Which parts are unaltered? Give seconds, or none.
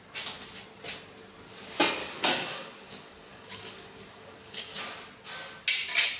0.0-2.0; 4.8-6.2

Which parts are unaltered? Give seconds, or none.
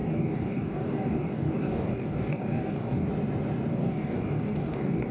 3.1-3.7